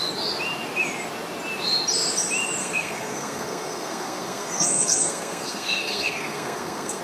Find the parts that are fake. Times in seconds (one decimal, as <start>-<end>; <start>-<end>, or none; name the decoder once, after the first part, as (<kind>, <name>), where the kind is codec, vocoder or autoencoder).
2.6-7.0 (codec, SNAC)